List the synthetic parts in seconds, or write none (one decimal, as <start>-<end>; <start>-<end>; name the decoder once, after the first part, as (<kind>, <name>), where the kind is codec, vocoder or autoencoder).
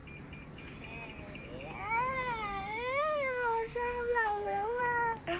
2.5-4.8 (autoencoder, DAC-VAE)